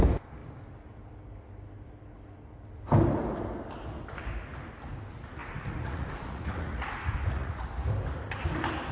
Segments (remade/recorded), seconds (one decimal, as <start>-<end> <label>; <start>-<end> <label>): 0.0-5.4 recorded; 5.4-7.7 remade; 7.7-8.9 recorded